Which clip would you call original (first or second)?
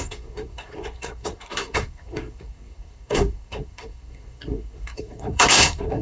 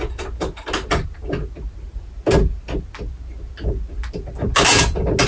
second